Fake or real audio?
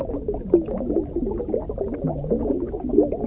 real